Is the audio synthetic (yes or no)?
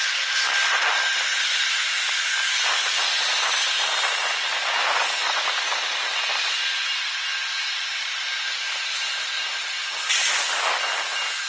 no